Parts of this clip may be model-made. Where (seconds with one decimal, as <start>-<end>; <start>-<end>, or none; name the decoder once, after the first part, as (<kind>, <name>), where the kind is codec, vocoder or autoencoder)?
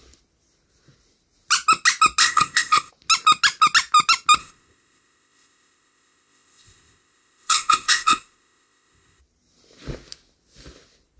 2.2-2.9 (codec, ZipCodec); 4.4-9.2